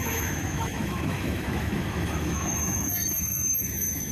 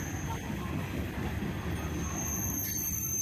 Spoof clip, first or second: first